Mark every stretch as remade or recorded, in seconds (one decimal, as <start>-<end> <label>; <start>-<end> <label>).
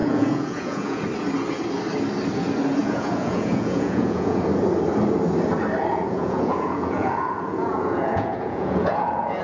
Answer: 0.0-1.0 remade; 1.0-2.8 recorded; 2.8-4.4 remade; 4.4-5.9 recorded; 5.9-9.4 remade